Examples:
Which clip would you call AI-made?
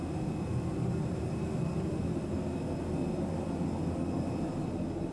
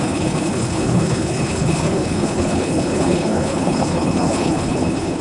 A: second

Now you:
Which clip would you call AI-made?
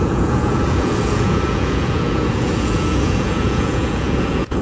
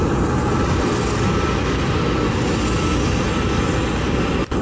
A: first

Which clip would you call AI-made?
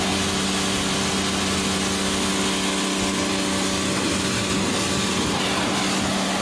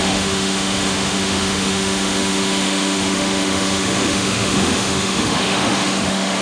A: second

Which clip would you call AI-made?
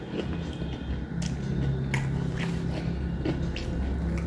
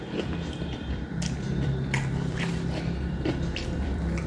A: second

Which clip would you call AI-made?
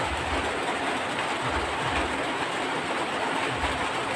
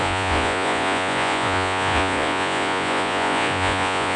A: second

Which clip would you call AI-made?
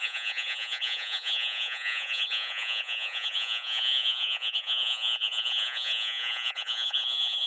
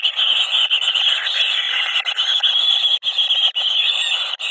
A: first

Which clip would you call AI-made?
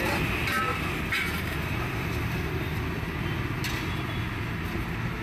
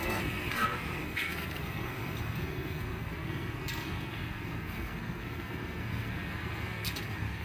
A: second